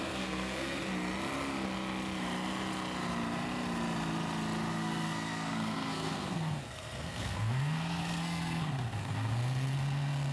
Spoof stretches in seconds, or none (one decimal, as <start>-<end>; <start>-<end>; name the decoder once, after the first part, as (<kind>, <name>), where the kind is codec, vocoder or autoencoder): 0.0-0.8 (codec, SNAC); 4.7-10.3